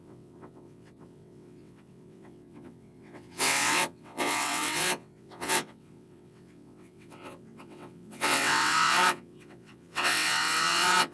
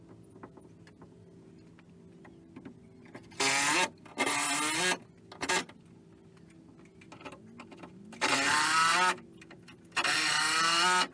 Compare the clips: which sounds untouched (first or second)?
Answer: second